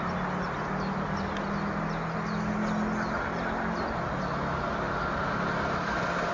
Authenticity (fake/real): real